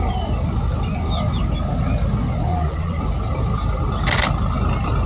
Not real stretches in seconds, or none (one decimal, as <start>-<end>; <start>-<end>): 2.5-3.0